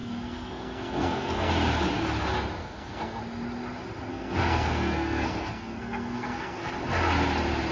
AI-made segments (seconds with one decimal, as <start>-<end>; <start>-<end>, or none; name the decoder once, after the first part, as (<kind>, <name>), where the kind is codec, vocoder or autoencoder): 0.0-1.5 (codec, SNAC); 2.6-3.2; 4.1-6.7